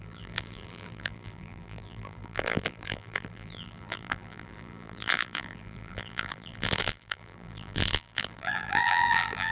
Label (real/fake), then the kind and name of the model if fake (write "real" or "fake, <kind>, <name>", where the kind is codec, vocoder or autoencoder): fake, vocoder, BigVGAN v2